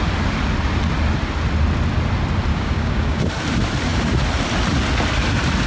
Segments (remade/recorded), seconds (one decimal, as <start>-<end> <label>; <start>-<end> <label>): 0.0-2.5 recorded; 2.5-3.2 remade; 3.2-5.7 recorded